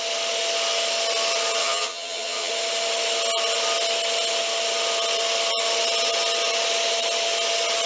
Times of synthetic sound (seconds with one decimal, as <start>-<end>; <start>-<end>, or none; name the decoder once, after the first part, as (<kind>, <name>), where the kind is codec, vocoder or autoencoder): 1.6-2.5 (vocoder, HiFi-GAN)